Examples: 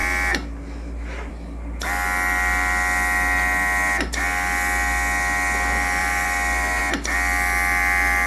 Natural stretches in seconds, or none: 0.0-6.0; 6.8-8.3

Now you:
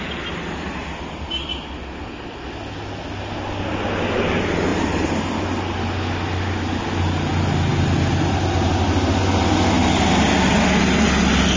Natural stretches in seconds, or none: 0.0-4.7; 5.2-11.6

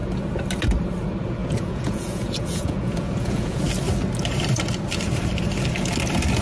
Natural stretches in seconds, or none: 0.0-1.4; 3.6-6.4

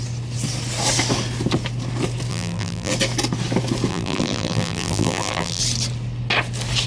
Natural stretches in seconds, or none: 0.0-2.3; 2.9-3.9; 5.6-6.9

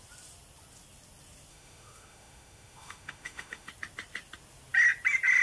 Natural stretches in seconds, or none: 0.0-1.5; 3.7-5.4